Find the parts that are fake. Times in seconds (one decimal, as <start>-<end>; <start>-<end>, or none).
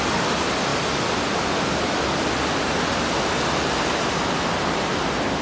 none